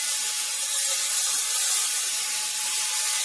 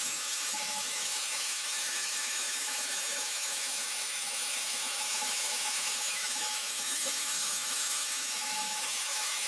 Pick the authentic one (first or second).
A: first